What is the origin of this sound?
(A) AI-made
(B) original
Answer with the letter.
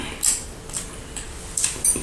B